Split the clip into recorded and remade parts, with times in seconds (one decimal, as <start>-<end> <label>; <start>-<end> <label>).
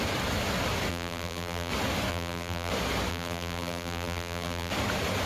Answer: 0.0-0.9 recorded; 0.9-1.7 remade; 1.7-2.1 recorded; 2.1-2.7 remade; 2.7-3.1 recorded; 3.1-4.7 remade; 4.7-5.3 recorded